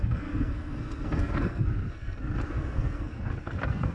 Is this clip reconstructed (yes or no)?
yes